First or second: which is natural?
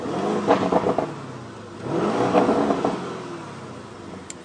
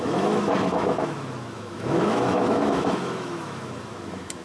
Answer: first